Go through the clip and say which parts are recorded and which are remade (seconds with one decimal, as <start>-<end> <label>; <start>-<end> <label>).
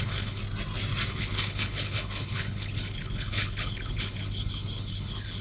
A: 0.0-0.4 remade; 0.4-1.1 recorded; 1.1-5.4 remade